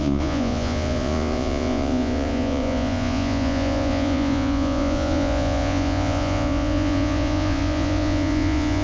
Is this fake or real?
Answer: fake